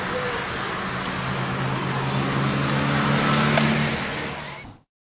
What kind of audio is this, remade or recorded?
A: recorded